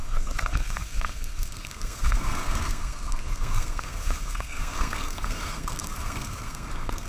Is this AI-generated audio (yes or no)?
yes